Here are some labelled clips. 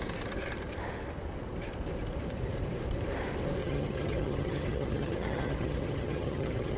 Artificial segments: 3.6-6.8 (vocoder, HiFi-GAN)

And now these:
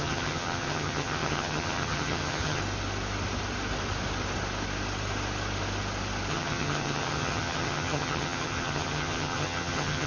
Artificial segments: 0.0-2.6 (vocoder, HiFi-GAN); 6.3-10.1

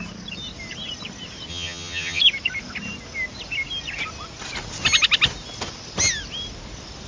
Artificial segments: 1.5-2.2 (vocoder, HiFi-GAN)